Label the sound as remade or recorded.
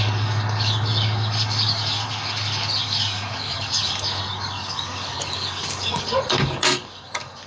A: remade